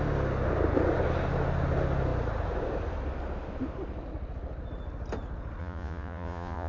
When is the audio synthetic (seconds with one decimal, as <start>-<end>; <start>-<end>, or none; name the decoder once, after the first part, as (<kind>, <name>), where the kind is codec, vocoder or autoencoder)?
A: 5.6-6.7 (vocoder, Vocos)